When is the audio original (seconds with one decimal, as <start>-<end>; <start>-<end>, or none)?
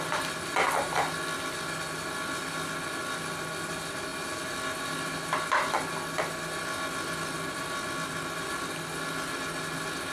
0.0-10.1